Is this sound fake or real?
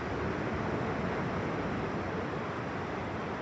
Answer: real